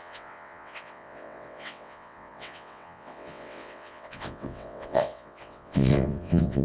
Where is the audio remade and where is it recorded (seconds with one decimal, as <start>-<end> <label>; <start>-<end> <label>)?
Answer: 0.0-6.6 remade